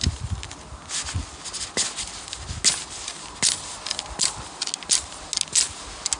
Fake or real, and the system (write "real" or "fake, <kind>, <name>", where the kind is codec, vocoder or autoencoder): real